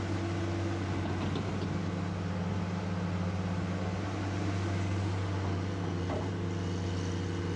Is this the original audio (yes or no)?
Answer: yes